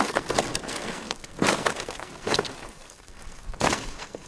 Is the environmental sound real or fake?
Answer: fake